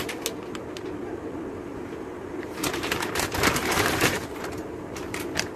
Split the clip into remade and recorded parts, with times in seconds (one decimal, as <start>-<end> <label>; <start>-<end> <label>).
0.0-1.7 recorded; 1.7-4.9 remade; 4.9-5.6 recorded